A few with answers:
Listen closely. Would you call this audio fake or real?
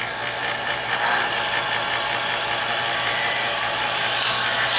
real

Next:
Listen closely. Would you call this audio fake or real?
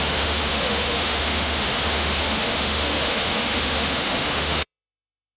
fake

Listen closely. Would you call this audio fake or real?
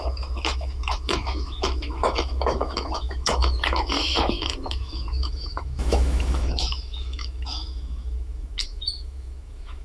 fake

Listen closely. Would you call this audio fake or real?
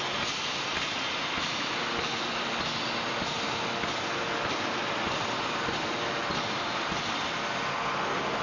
real